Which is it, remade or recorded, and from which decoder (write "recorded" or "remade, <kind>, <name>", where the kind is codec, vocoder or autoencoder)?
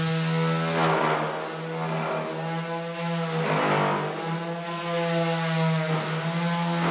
recorded